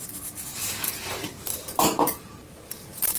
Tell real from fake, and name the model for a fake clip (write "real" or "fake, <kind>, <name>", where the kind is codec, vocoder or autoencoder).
fake, vocoder, BigVGAN v2